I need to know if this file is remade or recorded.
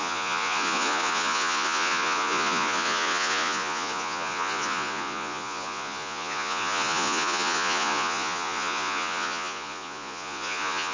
remade